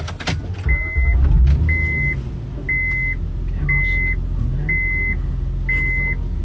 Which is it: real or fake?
real